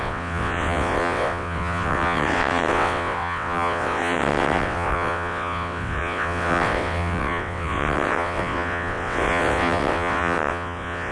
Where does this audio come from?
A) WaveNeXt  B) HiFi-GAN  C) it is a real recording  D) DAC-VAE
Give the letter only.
A